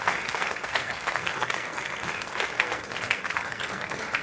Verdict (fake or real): fake